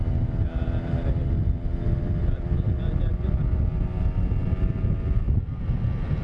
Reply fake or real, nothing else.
real